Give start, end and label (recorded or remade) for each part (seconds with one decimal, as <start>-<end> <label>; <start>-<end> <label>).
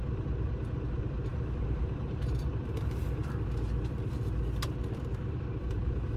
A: 0.0-3.2 remade; 3.2-5.6 recorded; 5.6-6.2 remade